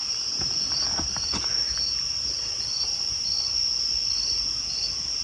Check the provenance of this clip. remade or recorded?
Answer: recorded